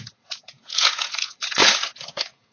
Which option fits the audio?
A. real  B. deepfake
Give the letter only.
B